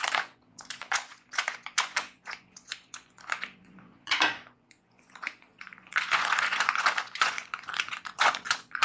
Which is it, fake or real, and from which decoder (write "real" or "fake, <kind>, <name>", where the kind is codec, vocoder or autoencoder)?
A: fake, vocoder, Vocos